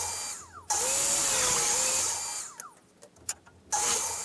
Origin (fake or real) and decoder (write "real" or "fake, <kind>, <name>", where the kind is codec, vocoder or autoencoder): real